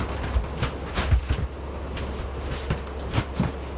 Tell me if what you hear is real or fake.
real